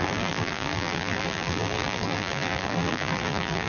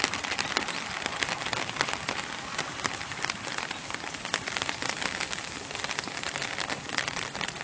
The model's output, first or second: first